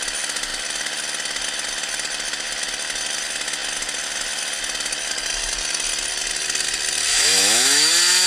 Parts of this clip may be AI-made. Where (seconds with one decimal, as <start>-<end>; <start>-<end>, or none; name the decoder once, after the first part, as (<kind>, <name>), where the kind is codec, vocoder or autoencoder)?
7.1-7.9 (autoencoder, DAC-VAE)